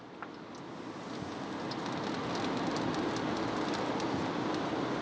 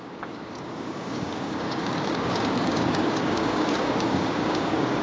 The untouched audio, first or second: first